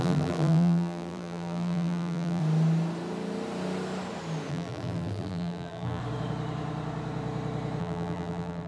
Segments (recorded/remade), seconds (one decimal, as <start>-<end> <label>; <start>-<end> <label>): 0.0-2.4 remade; 2.4-4.5 recorded; 4.5-6.0 remade; 6.0-7.8 recorded; 7.8-8.7 remade